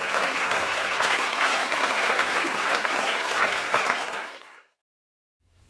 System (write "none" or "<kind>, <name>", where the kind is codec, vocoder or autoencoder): codec, SNAC